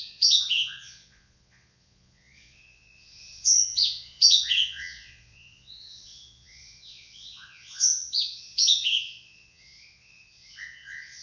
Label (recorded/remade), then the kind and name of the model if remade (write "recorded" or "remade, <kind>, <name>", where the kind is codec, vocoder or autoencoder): remade, vocoder, Vocos